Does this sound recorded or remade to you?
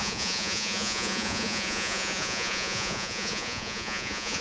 remade